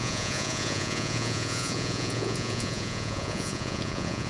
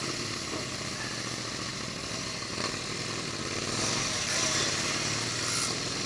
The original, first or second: second